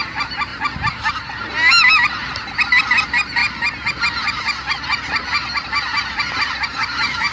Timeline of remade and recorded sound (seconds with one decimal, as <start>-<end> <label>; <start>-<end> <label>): 0.0-7.3 recorded

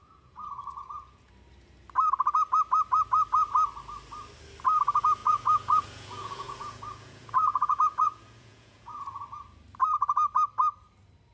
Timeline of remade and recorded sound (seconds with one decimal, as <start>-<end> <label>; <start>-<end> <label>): 0.0-1.3 remade; 1.3-5.2 recorded; 5.2-9.2 remade; 9.2-11.3 recorded

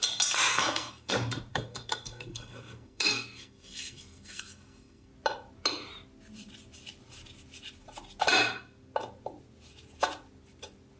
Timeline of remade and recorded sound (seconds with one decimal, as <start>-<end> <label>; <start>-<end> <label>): 0.0-0.5 recorded; 0.5-1.1 remade; 1.1-1.5 recorded; 1.5-5.1 remade; 5.1-11.0 recorded

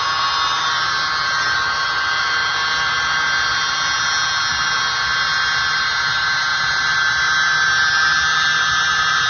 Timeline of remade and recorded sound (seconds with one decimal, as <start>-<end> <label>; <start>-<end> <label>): 0.0-9.3 recorded

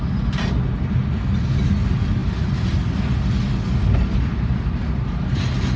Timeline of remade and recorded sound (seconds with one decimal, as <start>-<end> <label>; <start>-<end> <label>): 0.0-5.8 recorded

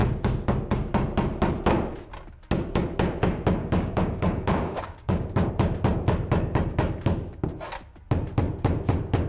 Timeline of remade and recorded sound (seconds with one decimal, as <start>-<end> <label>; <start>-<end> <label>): 0.0-3.6 recorded; 3.6-5.5 remade; 5.5-9.3 recorded